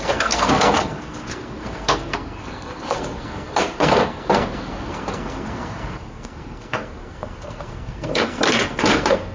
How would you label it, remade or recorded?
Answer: remade